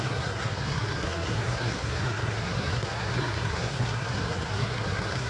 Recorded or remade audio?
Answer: remade